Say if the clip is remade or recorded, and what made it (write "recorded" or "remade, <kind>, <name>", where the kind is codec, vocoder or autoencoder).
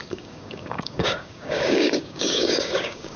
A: remade, codec, DAC